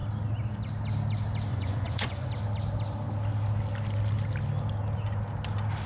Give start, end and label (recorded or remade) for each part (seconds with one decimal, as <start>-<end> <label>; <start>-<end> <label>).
0.0-1.5 recorded; 1.5-2.3 remade; 2.3-5.9 recorded